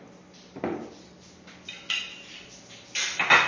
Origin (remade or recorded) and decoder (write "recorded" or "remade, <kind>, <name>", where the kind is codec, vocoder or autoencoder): recorded